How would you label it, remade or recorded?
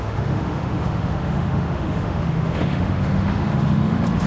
remade